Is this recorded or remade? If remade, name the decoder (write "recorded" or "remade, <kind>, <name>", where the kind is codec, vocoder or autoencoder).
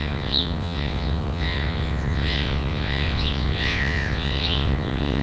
remade, vocoder, WaveNeXt